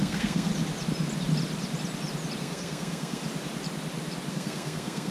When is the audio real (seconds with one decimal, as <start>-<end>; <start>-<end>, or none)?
0.5-2.4; 3.2-4.3

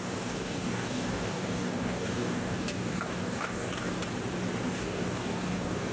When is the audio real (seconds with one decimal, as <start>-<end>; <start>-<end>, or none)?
4.0-4.7

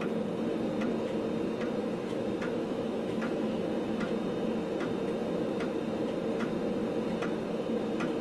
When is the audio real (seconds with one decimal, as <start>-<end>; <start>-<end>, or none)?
0.0-1.8; 3.7-8.2

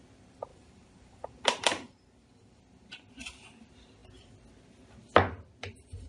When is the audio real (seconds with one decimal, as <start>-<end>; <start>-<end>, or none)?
0.0-0.5; 2.6-6.1

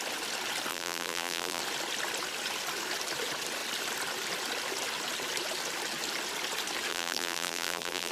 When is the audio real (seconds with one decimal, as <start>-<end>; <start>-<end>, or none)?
0.0-0.7; 1.6-6.9